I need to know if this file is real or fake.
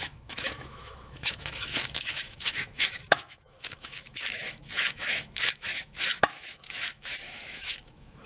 fake